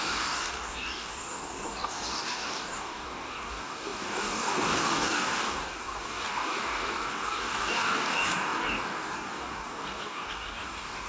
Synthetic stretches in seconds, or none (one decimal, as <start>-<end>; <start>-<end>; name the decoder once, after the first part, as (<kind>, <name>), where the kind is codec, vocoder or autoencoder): 0.0-11.1 (codec, DAC)